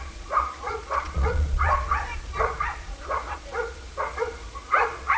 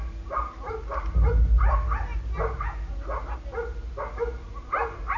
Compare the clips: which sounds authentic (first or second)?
second